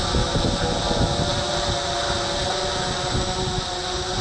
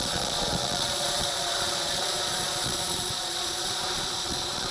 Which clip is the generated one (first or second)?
second